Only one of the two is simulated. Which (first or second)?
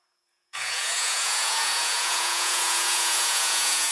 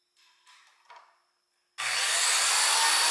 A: first